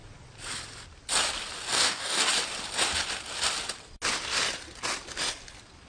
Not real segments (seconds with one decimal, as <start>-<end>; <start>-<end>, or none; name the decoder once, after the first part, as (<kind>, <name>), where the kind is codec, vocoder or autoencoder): 1.7-2.3 (codec, DAC)